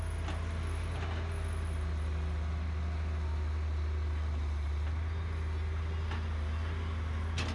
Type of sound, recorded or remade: recorded